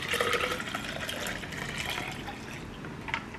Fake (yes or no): no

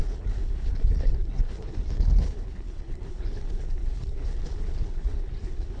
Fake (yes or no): yes